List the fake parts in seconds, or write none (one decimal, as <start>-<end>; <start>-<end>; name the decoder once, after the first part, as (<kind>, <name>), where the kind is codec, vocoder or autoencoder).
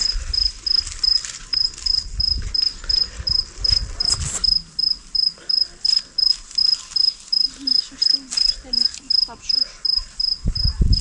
none